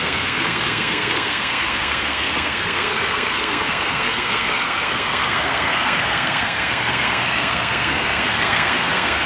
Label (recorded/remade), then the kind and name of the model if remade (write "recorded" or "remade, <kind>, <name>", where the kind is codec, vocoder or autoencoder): remade, codec, SNAC